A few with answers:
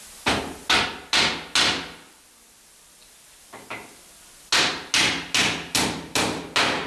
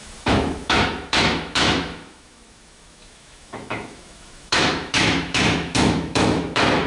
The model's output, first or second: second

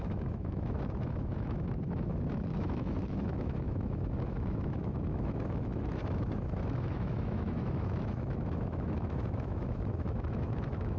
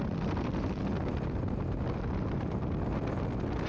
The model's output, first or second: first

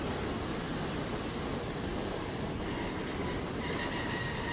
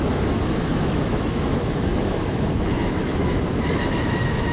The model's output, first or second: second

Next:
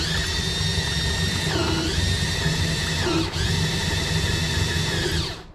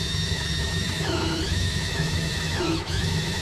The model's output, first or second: second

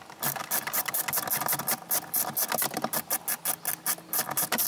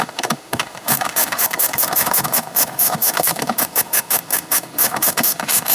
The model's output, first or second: second